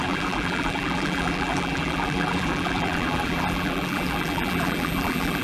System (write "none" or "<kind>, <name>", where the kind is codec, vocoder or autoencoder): vocoder, BigVGAN v2